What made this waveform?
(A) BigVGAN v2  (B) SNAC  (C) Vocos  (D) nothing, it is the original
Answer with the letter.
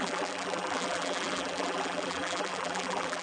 A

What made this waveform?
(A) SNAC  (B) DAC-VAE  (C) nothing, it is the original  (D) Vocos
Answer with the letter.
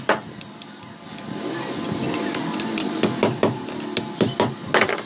C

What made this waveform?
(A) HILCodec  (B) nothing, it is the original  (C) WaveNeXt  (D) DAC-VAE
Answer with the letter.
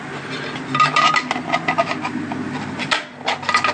B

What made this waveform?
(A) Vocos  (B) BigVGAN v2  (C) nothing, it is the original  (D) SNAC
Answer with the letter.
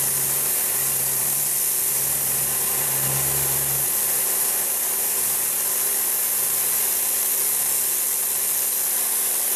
C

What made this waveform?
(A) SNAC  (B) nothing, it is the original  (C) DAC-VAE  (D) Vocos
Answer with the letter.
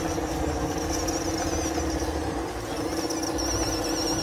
B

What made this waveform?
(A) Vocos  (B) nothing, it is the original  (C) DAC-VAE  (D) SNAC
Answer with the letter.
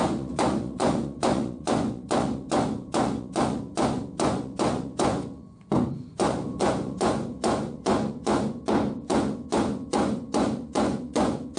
A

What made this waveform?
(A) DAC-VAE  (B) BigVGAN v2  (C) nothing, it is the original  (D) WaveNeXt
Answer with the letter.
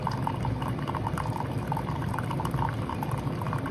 B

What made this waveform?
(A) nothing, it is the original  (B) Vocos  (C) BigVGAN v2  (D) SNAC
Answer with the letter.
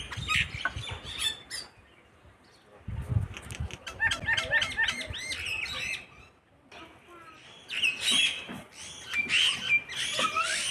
A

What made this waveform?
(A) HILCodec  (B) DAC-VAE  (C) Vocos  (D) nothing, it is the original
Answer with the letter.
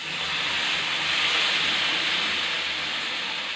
D